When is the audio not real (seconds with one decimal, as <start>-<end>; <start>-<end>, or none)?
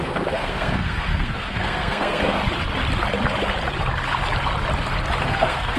0.0-2.4; 5.2-5.8